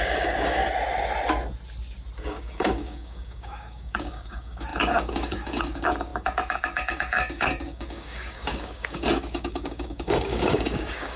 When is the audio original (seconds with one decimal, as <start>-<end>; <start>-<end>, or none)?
0.6-2.2